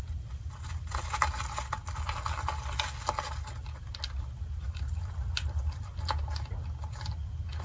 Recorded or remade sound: recorded